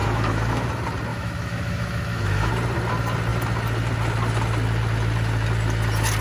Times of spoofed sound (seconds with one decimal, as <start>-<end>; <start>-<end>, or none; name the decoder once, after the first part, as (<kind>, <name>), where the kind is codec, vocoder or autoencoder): 0.0-0.7 (autoencoder, DAC-VAE); 1.1-2.5

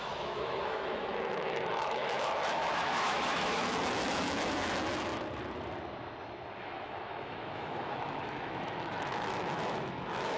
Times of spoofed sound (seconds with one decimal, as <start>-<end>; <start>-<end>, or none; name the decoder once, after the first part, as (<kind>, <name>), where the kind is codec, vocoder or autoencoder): 0.0-5.1 (autoencoder, DAC-VAE); 6.6-10.4